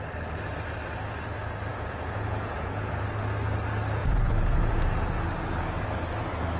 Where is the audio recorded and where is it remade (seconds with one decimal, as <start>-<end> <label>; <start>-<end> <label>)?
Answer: 0.0-1.7 recorded; 1.7-2.9 remade; 2.9-4.0 recorded; 4.0-4.9 remade; 4.9-6.6 recorded